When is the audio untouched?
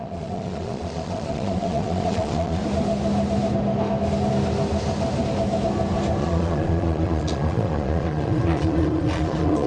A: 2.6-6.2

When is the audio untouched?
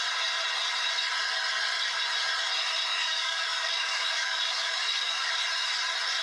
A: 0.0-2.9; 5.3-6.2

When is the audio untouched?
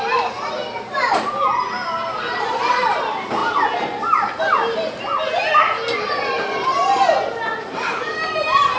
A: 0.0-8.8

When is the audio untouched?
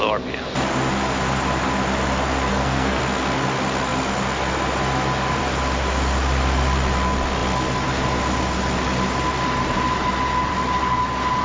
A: 0.0-2.5; 3.0-11.4